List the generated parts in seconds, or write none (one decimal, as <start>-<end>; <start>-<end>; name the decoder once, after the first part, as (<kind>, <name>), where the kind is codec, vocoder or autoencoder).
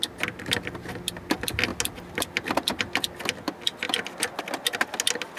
none